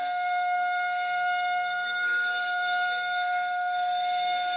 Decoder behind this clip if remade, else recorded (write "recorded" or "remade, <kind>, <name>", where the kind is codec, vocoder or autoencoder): remade, codec, SNAC